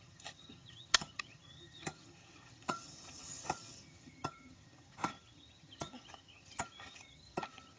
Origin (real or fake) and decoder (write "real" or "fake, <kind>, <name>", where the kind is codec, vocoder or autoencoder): fake, vocoder, HiFi-GAN